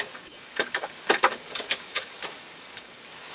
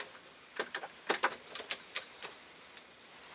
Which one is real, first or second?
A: second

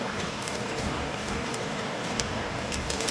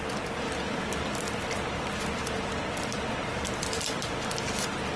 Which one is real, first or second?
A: second